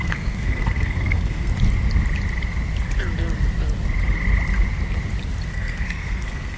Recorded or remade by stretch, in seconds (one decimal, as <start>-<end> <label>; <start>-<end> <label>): 0.0-1.5 remade; 1.5-5.5 recorded; 5.5-6.6 remade